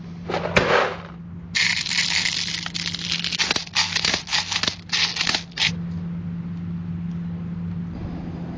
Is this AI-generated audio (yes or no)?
no